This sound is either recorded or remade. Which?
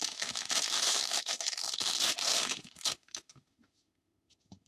remade